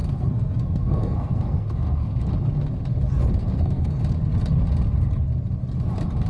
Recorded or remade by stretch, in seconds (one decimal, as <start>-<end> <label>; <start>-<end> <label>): 0.0-2.3 remade; 2.3-3.4 recorded; 3.4-4.0 remade; 4.0-6.3 recorded